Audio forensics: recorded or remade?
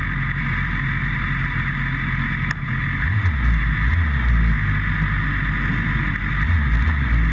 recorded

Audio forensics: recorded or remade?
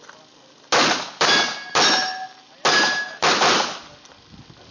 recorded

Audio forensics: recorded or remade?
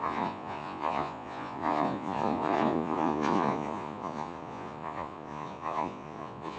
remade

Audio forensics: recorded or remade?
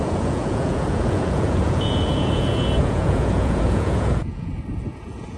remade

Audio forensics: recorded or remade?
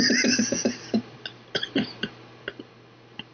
recorded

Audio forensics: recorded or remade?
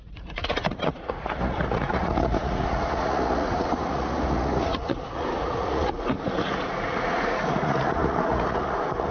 remade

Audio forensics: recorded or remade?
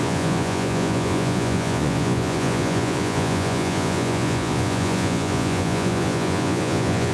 remade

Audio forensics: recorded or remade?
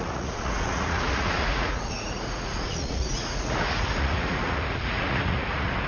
remade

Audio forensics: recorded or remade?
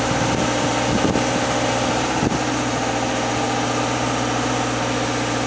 recorded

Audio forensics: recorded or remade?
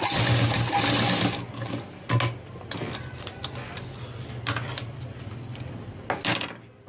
recorded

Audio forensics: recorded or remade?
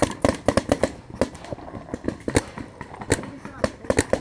recorded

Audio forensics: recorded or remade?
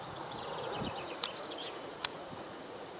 remade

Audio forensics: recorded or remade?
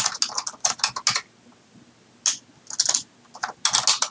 recorded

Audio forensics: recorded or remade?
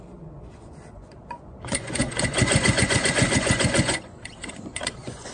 remade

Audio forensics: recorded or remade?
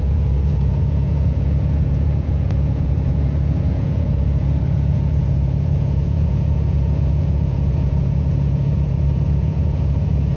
remade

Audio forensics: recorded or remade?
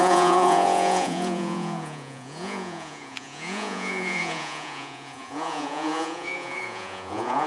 remade